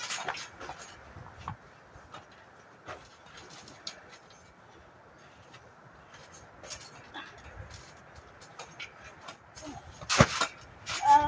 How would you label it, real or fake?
real